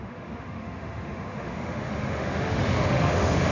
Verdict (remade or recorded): remade